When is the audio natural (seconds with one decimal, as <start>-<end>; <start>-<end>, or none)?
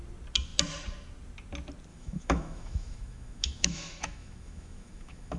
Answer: 0.0-1.9